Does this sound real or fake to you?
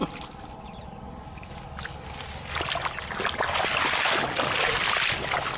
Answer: real